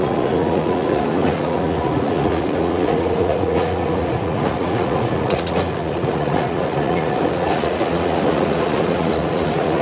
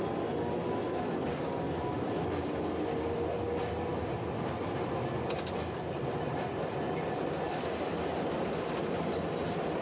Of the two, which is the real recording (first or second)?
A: second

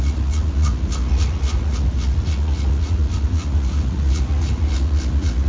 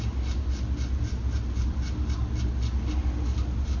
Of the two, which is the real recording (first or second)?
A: second